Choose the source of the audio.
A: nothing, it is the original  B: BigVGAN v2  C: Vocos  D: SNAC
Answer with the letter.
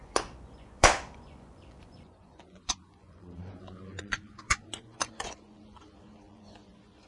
C